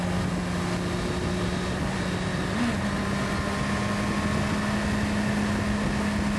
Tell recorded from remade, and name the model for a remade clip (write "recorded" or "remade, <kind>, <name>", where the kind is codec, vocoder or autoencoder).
recorded